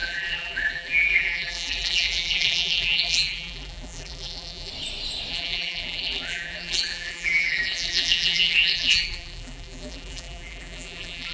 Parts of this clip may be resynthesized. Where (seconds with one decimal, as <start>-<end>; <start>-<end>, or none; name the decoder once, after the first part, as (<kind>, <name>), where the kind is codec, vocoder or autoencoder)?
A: 0.0-4.7 (vocoder, BigVGAN v2); 5.3-11.3